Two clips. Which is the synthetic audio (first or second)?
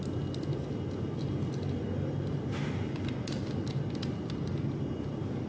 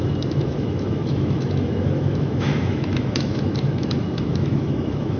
second